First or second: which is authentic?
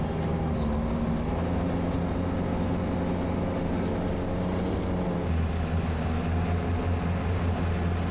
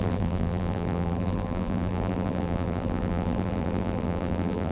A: first